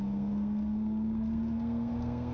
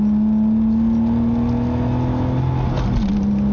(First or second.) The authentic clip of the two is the second